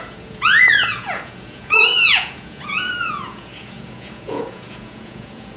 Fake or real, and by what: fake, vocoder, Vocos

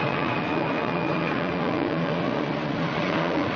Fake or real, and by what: fake, vocoder, Vocos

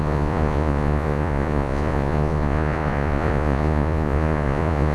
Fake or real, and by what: fake, vocoder, Vocos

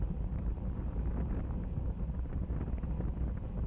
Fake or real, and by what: real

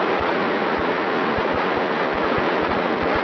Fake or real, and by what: fake, vocoder, Vocos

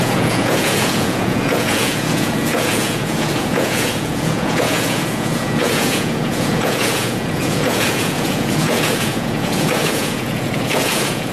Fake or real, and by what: fake, vocoder, Vocos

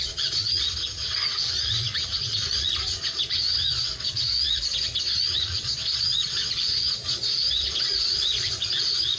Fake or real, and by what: fake, vocoder, Vocos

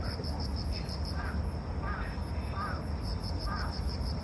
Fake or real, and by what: real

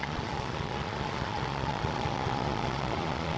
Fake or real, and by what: fake, vocoder, Vocos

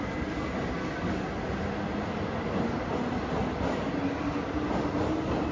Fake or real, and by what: real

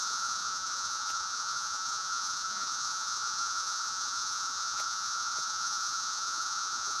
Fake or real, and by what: fake, vocoder, Vocos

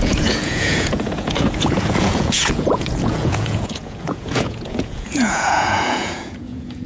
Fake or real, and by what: fake, vocoder, Vocos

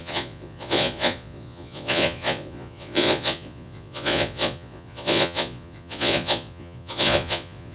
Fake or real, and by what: fake, vocoder, Vocos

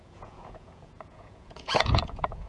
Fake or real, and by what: fake, vocoder, Vocos